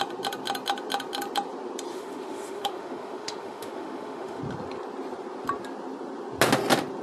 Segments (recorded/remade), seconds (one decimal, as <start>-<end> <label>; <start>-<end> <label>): 0.0-1.9 recorded; 1.9-4.4 remade; 4.4-7.0 recorded